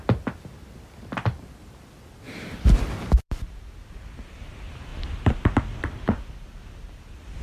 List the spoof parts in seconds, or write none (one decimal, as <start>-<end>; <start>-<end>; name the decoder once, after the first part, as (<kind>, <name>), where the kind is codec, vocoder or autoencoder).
0.0-4.9 (vocoder, BigVGAN v2); 6.7-7.4